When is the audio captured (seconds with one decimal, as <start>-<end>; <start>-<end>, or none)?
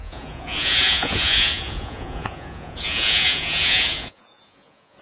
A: none